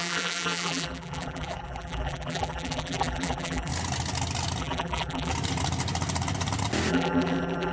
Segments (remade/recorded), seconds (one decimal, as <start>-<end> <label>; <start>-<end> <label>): 0.0-3.7 remade; 3.7-4.6 recorded; 4.6-5.3 remade; 5.3-6.9 recorded; 6.9-7.7 remade